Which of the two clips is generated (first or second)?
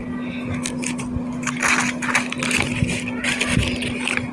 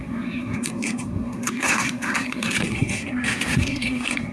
second